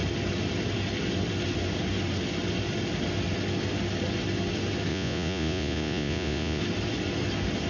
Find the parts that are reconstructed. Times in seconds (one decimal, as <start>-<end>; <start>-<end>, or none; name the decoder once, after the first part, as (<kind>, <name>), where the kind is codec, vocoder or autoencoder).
4.9-6.6 (vocoder, Vocos)